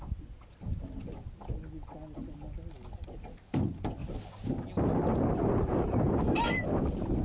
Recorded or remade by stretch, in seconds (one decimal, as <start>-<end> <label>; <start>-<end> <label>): 0.0-7.2 recorded